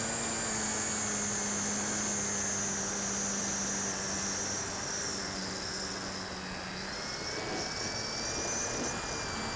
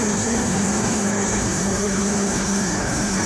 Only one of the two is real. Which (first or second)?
first